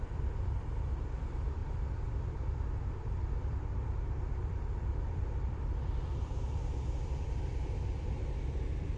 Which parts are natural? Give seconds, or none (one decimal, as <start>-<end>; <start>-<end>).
none